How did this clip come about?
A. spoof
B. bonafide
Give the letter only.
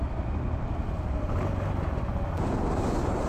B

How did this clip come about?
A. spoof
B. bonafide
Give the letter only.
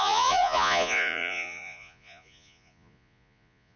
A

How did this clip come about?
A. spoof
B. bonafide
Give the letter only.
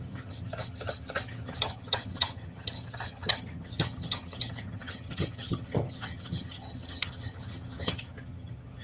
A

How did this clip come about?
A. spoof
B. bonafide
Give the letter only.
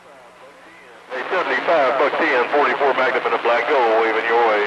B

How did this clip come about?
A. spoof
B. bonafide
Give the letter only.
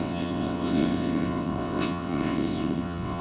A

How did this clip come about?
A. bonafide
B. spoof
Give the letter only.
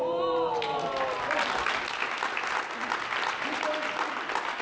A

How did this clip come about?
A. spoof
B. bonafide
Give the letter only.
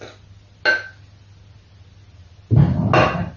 B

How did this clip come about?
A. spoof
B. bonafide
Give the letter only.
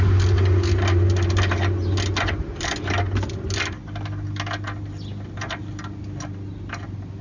B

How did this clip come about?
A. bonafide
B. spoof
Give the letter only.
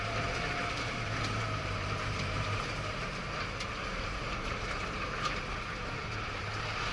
B